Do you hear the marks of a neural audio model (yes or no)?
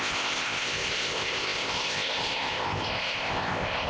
yes